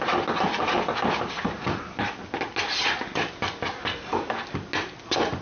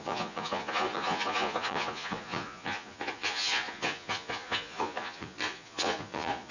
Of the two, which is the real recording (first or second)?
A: first